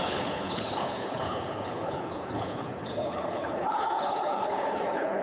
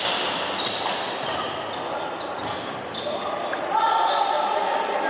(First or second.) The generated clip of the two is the first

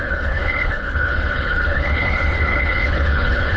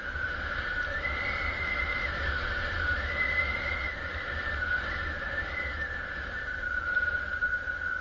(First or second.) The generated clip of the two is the first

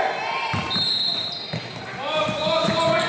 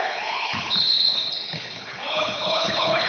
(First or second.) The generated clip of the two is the second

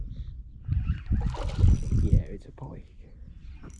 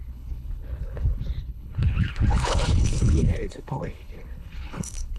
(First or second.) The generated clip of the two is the second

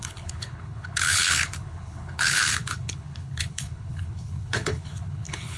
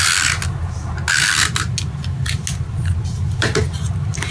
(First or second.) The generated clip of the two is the first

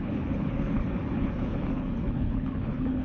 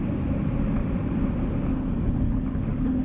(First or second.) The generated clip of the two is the first